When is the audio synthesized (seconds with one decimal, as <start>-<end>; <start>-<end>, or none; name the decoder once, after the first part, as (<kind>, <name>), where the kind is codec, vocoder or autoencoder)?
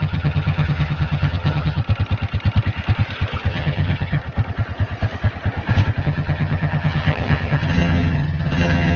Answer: 0.0-1.8 (vocoder, HiFi-GAN); 3.5-4.2; 6.0-9.0